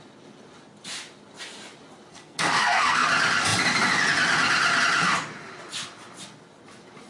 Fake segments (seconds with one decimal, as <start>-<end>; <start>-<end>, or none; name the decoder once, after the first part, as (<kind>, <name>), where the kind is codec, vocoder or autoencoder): 2.1-3.1 (codec, SNAC)